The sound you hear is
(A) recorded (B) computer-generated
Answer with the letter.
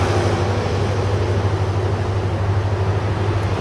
A